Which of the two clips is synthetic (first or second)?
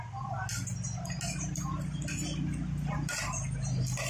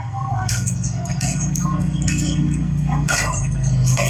second